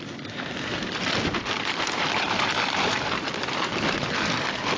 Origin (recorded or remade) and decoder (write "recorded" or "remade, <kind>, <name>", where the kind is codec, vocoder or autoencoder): remade, vocoder, BigVGAN v2